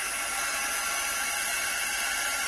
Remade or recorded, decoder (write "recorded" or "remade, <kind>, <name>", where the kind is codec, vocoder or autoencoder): recorded